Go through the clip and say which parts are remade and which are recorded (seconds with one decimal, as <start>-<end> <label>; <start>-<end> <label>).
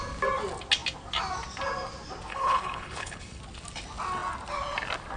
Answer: 0.0-2.3 recorded; 2.3-3.4 remade; 3.4-5.2 recorded